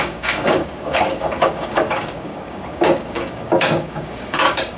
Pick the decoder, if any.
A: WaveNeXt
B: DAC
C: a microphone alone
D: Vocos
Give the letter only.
B